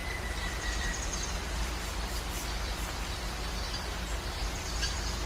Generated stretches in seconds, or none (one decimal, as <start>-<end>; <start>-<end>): 0.0-3.2; 4.4-5.3